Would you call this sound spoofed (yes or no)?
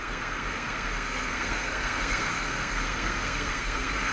yes